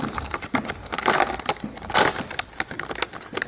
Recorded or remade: recorded